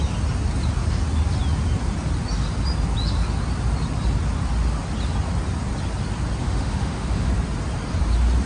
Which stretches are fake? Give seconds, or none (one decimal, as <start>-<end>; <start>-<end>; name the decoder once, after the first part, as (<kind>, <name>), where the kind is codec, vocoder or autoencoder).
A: 6.4-7.3 (autoencoder, DAC-VAE)